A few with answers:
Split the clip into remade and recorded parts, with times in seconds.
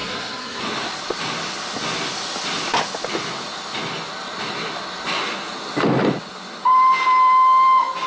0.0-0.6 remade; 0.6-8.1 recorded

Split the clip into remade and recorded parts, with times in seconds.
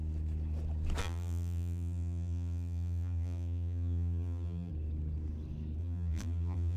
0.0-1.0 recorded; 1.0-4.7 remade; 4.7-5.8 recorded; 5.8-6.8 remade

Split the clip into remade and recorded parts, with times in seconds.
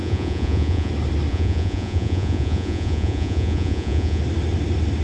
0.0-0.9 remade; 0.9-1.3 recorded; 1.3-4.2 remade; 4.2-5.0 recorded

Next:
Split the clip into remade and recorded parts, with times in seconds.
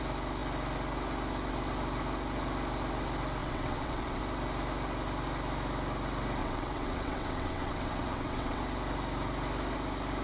0.0-3.4 recorded; 3.4-4.2 remade; 4.2-6.4 recorded; 6.4-8.6 remade; 8.6-10.2 recorded